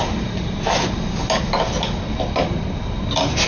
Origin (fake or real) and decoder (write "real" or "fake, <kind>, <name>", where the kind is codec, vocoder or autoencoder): real